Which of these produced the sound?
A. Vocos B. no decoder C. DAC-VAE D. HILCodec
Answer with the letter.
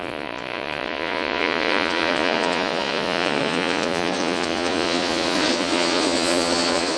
A